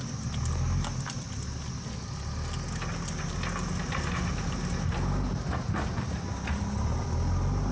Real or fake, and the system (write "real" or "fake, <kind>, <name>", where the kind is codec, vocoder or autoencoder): real